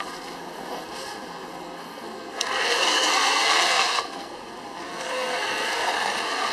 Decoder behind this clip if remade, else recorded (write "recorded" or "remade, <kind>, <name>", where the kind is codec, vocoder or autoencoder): remade, codec, SNAC